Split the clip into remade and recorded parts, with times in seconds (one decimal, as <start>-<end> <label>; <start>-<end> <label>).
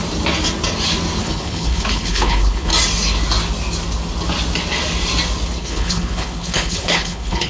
0.0-1.2 recorded; 1.2-2.7 remade; 2.7-5.6 recorded; 5.6-7.5 remade